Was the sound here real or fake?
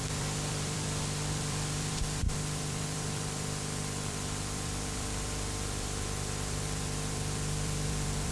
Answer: fake